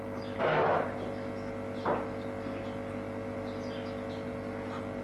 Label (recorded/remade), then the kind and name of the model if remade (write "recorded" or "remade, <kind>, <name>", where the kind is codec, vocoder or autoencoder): recorded